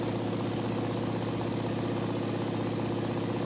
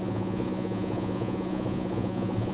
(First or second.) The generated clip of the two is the second